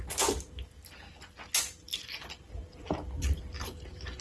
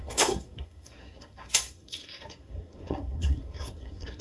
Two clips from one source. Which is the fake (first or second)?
second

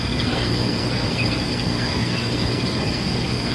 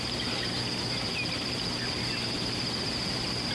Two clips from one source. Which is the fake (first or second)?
first